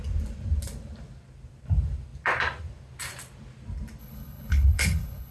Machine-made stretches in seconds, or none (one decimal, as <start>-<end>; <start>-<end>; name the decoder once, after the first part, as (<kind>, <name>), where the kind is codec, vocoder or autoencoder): 4.0-5.3 (codec, HILCodec)